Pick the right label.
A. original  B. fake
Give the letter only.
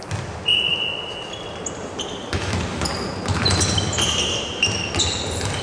A